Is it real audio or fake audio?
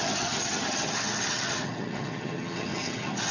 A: fake